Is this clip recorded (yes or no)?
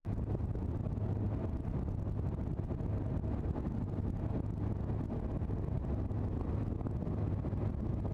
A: yes